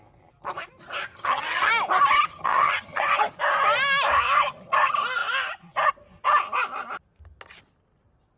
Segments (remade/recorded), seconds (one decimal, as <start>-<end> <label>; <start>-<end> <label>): 0.0-1.1 recorded; 1.1-1.7 remade; 1.7-2.3 recorded; 2.3-3.0 remade; 3.0-8.4 recorded